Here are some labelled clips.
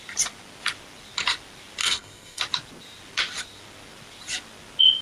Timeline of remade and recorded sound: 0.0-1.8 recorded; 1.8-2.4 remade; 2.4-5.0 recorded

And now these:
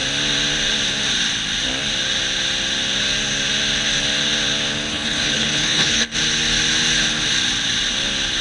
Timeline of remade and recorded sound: 0.0-4.9 recorded; 4.9-6.2 remade; 6.2-8.4 recorded

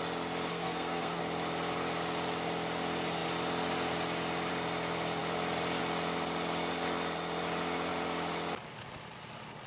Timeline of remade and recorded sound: 0.0-0.5 recorded; 0.5-1.2 remade; 1.2-9.7 recorded